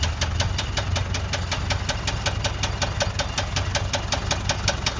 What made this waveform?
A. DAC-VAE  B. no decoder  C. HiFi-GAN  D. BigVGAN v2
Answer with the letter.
B